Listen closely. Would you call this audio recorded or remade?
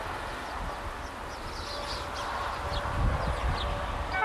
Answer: recorded